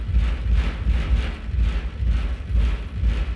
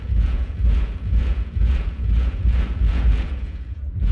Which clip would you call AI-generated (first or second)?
second